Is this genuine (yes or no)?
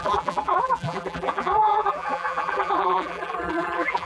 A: no